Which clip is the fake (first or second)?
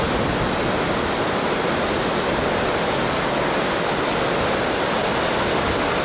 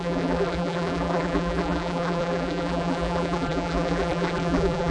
second